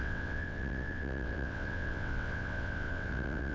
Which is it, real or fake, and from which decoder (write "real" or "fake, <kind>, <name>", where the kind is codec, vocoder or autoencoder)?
fake, vocoder, WaveNeXt